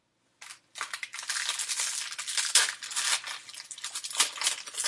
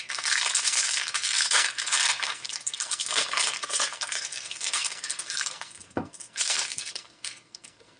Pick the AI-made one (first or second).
second